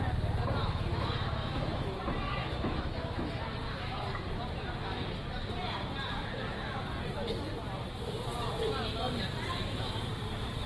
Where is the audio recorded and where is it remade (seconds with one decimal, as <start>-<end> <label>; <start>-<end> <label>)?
0.0-0.6 recorded; 0.6-2.0 remade; 2.0-2.4 recorded; 2.4-3.3 remade; 3.3-10.7 recorded